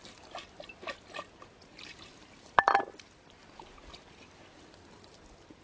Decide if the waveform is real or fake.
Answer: real